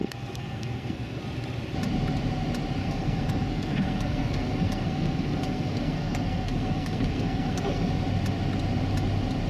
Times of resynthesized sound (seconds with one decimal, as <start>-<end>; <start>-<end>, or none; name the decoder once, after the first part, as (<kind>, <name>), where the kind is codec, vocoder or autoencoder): 0.0-1.2 (codec, SNAC); 2.8-7.9